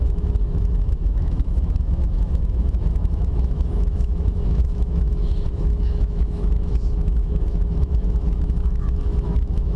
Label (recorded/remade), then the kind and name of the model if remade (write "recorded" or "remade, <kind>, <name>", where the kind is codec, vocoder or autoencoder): remade, autoencoder, DAC-VAE